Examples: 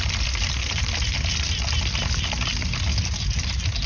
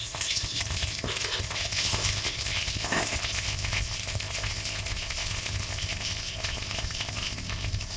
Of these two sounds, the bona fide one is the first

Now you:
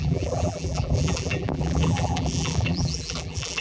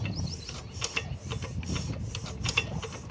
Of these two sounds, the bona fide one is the second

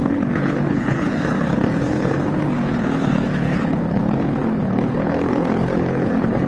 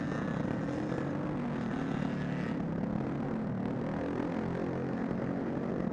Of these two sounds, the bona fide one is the second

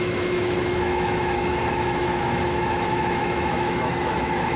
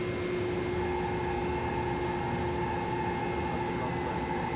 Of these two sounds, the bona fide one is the second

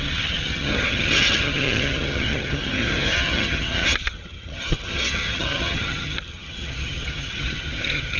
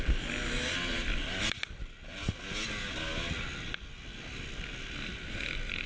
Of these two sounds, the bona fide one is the second